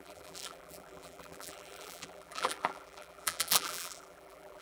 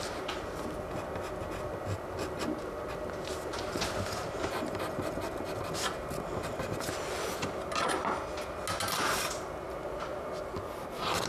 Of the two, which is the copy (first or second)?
first